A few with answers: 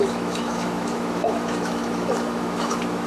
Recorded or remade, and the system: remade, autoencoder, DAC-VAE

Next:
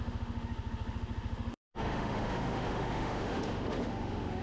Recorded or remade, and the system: remade, autoencoder, DAC-VAE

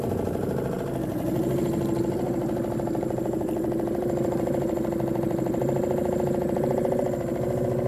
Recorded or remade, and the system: recorded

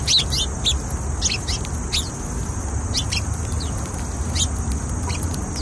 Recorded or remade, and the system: recorded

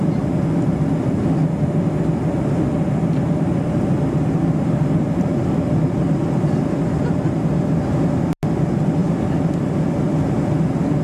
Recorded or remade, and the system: recorded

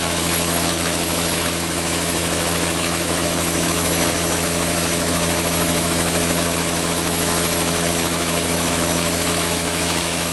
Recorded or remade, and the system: remade, autoencoder, DAC-VAE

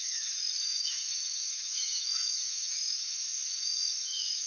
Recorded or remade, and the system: remade, autoencoder, DAC-VAE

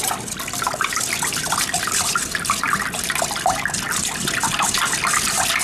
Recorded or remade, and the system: recorded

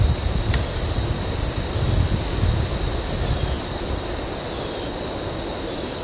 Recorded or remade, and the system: recorded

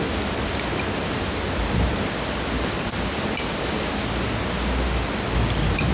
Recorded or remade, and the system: recorded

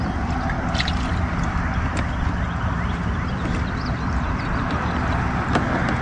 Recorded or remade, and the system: recorded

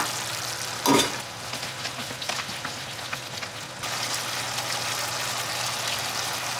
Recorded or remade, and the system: recorded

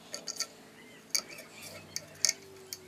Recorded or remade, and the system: recorded